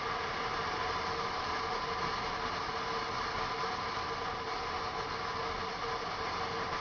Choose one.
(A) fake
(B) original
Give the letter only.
B